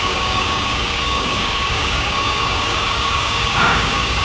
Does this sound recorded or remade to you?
remade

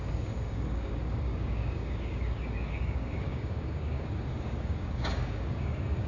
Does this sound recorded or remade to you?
remade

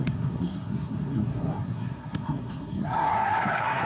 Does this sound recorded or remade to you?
remade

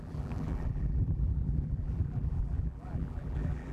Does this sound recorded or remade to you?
remade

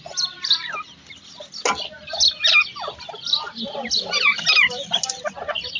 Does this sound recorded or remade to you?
recorded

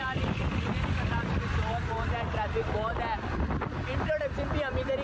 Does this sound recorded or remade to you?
recorded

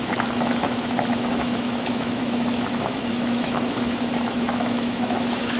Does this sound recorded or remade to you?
remade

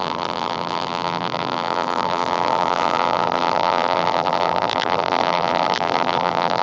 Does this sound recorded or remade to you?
remade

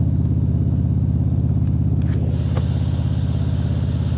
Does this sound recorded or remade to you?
recorded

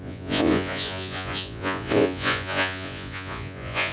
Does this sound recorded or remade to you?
remade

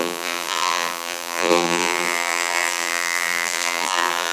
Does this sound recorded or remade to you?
remade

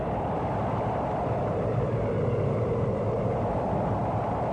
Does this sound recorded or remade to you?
recorded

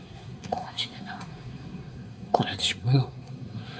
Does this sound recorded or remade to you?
remade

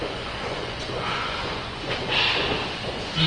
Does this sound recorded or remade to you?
remade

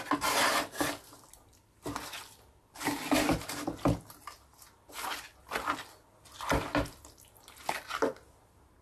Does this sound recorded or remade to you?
recorded